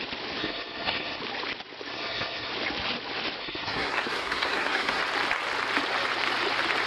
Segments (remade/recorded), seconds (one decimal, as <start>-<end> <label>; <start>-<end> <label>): 0.0-0.4 recorded; 0.4-1.2 remade; 1.2-1.9 recorded; 1.9-2.5 remade; 2.5-3.4 recorded; 3.4-5.0 remade; 5.0-6.9 recorded